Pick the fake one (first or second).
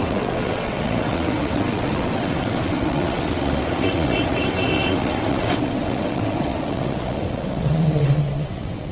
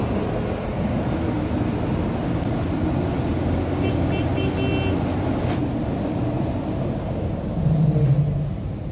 first